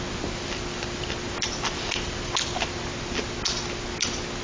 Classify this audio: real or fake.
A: real